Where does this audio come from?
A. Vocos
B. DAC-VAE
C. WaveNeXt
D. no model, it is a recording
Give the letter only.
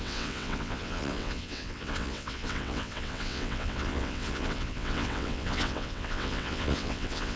C